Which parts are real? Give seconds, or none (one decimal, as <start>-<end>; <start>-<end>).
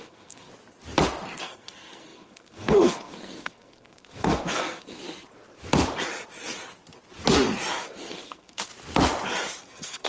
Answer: 0.5-1.4; 5.0-8.0; 8.7-9.6